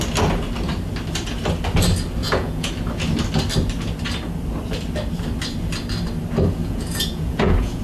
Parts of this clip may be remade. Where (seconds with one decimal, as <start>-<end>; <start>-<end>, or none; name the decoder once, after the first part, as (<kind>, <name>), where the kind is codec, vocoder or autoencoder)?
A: 2.2-2.7 (vocoder, Vocos); 6.6-7.8